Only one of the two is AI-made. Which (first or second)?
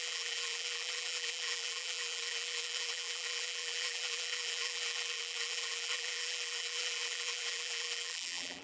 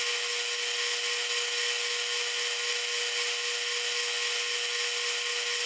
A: first